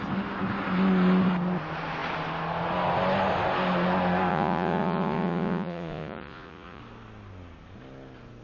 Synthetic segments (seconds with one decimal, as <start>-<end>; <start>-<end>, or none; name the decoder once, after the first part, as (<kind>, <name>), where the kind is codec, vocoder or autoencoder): 4.3-6.8 (vocoder, Vocos)